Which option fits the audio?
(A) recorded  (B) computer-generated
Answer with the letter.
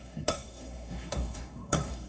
B